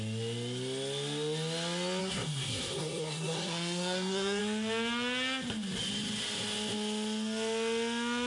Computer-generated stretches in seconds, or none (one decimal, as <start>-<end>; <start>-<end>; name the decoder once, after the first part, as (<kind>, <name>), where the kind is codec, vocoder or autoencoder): 2.0-4.4 (codec, SNAC)